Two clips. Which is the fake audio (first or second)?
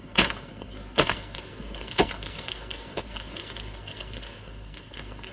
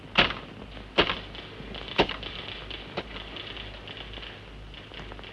first